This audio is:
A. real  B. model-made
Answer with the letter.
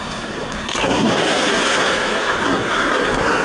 B